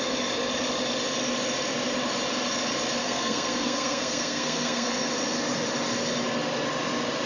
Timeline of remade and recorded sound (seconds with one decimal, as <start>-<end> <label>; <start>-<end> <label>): 0.0-3.0 recorded; 3.0-5.1 remade; 5.1-7.3 recorded